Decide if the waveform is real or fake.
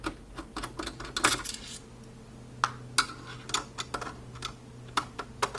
real